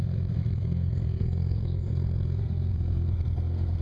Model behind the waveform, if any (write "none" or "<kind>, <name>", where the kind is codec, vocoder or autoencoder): codec, SNAC